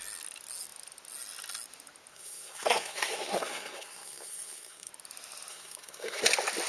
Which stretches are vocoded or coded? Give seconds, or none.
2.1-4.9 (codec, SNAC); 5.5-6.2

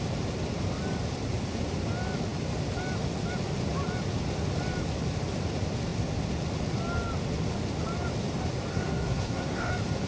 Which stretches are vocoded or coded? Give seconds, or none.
8.7-9.7 (codec, SNAC)